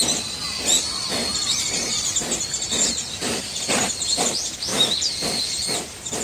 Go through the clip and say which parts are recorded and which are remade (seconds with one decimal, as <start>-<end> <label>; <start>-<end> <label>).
0.0-1.2 recorded; 1.2-4.2 remade; 4.2-6.2 recorded